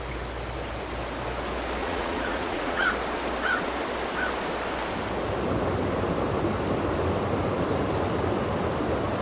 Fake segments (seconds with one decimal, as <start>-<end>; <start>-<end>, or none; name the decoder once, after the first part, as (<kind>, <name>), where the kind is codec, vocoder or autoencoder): 1.8-2.9 (vocoder, Vocos)